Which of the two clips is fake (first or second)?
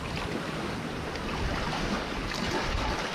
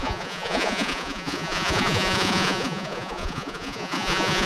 second